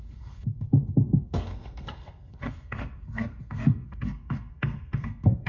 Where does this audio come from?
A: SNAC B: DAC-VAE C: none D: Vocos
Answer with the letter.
A